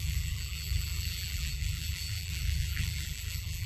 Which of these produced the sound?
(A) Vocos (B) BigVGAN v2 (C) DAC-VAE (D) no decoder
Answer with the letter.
B